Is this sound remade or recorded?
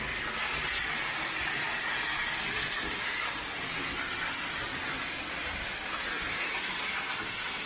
recorded